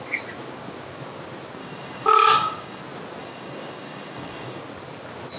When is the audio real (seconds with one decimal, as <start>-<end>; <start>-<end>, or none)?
0.0-1.6; 2.8-3.2; 4.6-5.4